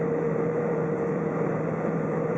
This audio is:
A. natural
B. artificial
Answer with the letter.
B